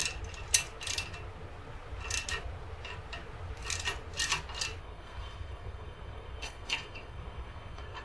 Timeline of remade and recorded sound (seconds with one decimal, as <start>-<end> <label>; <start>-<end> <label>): 0.0-4.8 recorded; 4.8-8.0 remade